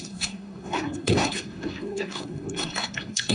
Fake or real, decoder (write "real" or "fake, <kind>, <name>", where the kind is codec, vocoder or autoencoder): fake, codec, SNAC